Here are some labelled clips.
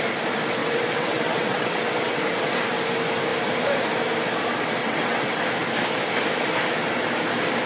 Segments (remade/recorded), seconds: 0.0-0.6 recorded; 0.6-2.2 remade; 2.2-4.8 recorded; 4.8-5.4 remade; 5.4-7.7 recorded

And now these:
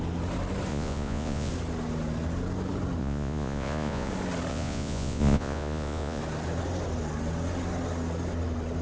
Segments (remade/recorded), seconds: 0.0-0.7 recorded; 0.7-1.5 remade; 1.5-3.0 recorded; 3.0-4.1 remade; 4.1-4.5 recorded; 4.5-6.2 remade; 6.2-8.8 recorded